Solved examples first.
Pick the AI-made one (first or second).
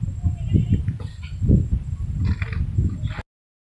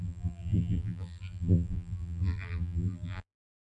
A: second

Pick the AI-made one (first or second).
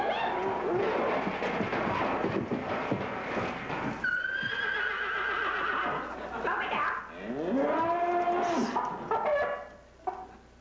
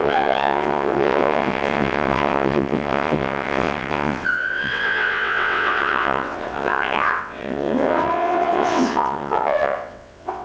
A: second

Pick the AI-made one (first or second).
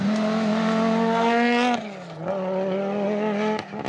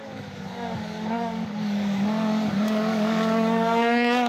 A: second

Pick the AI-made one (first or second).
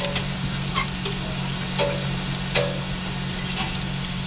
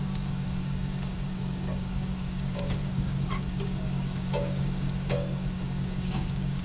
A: second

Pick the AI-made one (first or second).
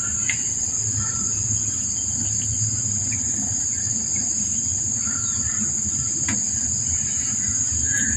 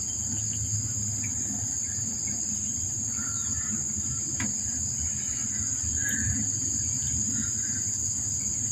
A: first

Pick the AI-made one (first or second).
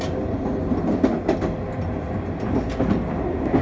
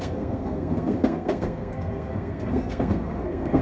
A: second